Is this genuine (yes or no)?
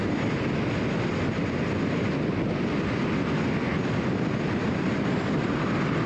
yes